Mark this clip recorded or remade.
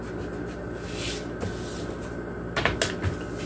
recorded